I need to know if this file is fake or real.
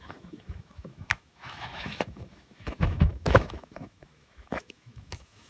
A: fake